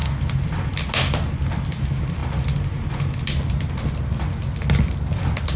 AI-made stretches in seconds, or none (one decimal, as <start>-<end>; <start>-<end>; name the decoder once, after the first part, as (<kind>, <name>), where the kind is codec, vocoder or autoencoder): none